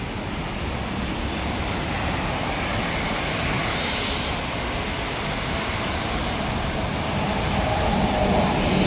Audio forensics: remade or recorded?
recorded